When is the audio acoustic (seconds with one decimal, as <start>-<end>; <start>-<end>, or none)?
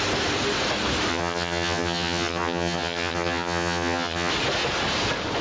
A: 0.0-1.1; 4.3-5.4